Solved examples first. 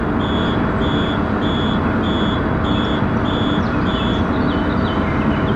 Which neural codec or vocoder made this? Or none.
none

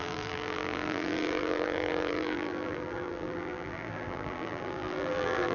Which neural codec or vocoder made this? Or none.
vocoder, BigVGAN v2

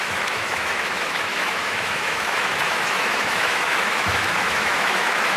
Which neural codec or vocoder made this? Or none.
autoencoder, DAC-VAE